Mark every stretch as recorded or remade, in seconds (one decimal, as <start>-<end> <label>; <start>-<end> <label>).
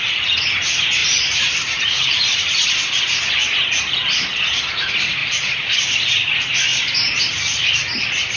0.0-1.0 recorded; 1.0-2.7 remade; 2.7-5.2 recorded; 5.2-5.7 remade; 5.7-6.7 recorded; 6.7-7.2 remade; 7.2-8.4 recorded